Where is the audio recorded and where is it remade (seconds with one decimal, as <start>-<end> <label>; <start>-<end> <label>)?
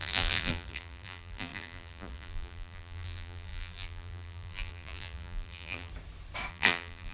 0.0-5.9 remade; 5.9-6.5 recorded; 6.5-7.1 remade